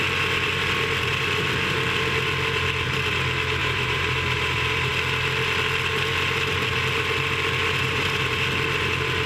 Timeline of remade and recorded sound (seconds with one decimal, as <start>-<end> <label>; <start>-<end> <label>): 0.0-3.6 recorded; 3.6-4.9 remade; 4.9-9.3 recorded